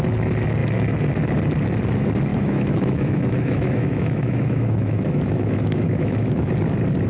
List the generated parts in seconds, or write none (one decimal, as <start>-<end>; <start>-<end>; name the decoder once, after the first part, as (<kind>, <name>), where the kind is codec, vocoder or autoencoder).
2.3-6.5 (autoencoder, DAC-VAE)